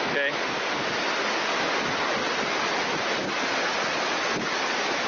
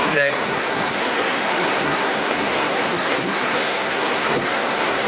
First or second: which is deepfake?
second